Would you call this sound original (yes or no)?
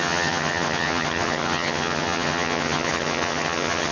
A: no